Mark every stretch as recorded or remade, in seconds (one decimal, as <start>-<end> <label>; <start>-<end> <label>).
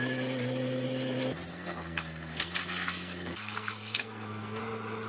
0.0-1.5 recorded; 1.5-4.6 remade; 4.6-5.1 recorded